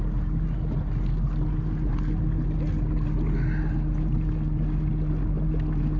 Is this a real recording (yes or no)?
yes